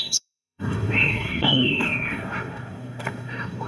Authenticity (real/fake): fake